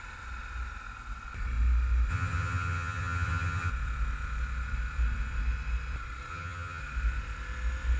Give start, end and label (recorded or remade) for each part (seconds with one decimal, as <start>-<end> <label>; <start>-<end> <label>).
0.0-2.1 recorded; 2.1-3.7 remade; 3.7-6.3 recorded; 6.3-6.8 remade; 6.8-8.0 recorded